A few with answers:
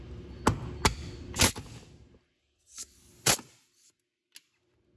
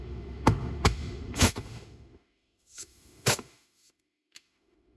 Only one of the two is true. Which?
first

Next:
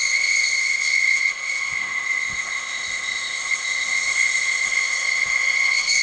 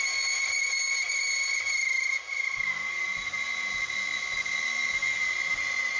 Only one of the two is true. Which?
second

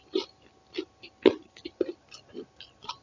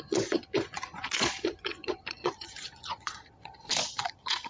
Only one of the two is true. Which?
first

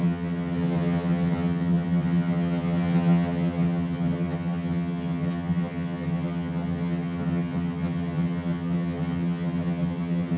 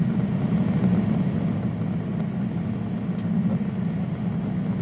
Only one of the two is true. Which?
second